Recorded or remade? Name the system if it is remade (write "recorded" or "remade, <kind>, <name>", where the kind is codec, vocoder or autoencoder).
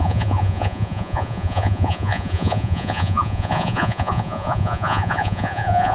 remade, vocoder, Vocos